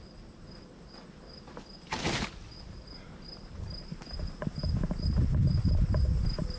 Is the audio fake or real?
real